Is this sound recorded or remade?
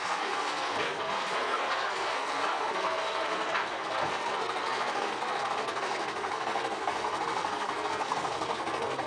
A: remade